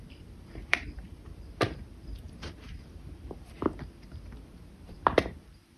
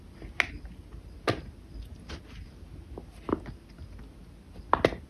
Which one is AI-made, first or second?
first